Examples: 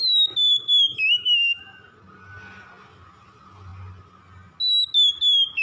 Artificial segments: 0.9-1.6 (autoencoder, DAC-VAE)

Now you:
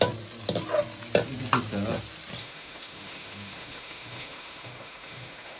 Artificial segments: 2.4-5.6 (autoencoder, DAC-VAE)

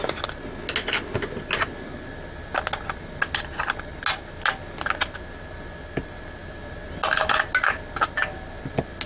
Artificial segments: none

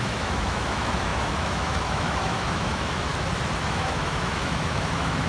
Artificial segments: 0.0-3.1 (autoencoder, DAC-VAE); 3.6-5.3